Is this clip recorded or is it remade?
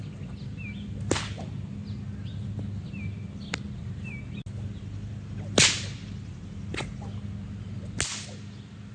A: recorded